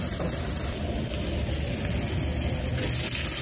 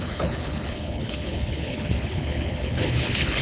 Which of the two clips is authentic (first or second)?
first